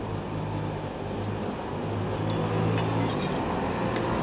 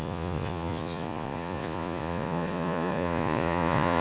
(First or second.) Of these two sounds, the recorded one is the first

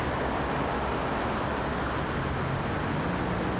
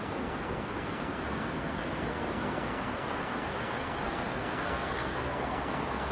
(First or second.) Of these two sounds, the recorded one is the first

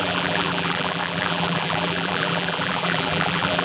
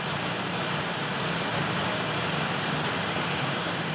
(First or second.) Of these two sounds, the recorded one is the second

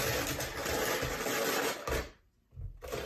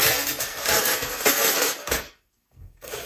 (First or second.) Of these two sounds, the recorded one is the first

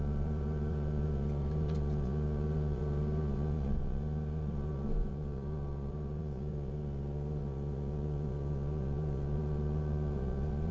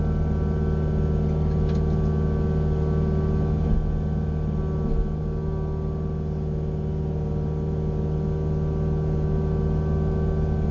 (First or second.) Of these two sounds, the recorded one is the second